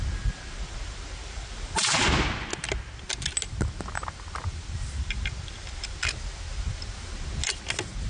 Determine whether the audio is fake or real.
real